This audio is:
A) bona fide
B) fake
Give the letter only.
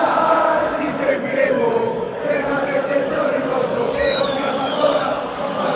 B